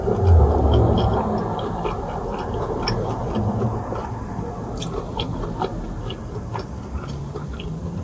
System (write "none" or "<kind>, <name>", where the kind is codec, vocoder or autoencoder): none